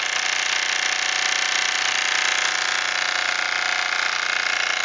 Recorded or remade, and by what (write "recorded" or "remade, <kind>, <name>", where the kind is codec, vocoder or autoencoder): recorded